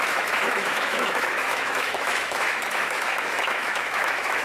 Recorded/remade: remade